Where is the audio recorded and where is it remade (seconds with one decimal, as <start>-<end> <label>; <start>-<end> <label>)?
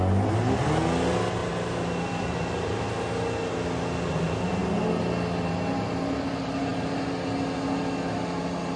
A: 0.0-1.4 recorded; 1.4-2.9 remade; 2.9-8.8 recorded